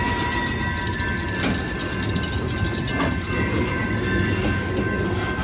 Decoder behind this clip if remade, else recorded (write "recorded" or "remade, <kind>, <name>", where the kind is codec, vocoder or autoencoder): recorded